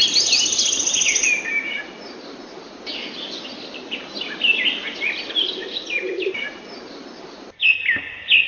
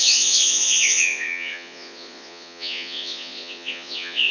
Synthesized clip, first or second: second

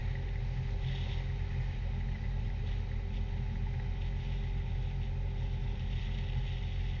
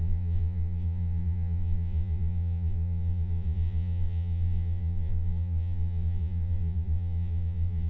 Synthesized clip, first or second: second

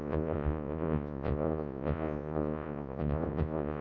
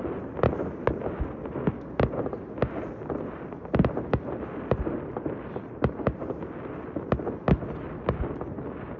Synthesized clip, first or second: first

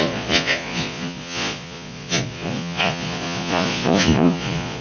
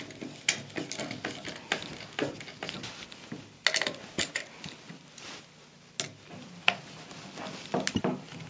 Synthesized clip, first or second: first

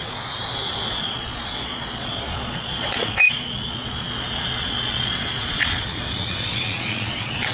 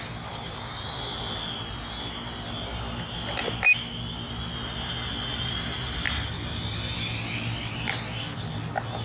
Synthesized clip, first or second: first